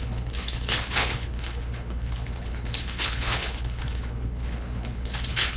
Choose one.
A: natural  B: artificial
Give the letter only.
B